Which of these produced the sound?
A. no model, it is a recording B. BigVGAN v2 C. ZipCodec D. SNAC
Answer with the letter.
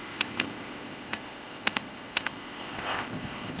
C